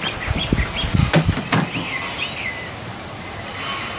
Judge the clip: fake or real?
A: real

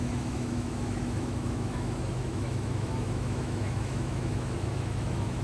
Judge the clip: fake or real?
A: fake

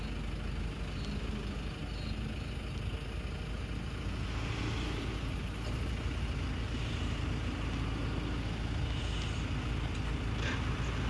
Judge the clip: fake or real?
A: real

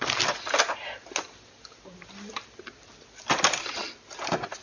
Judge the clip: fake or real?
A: real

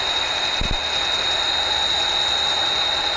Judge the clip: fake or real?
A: real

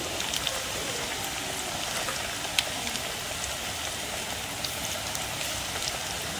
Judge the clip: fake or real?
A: real